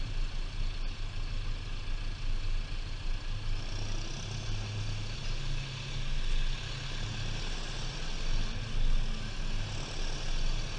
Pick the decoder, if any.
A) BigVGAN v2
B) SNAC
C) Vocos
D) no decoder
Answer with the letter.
D